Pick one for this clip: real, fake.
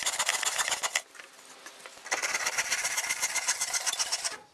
real